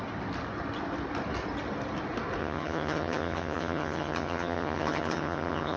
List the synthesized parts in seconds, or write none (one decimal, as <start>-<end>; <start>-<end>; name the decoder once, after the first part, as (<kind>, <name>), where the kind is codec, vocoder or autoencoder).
2.4-5.8 (vocoder, HiFi-GAN)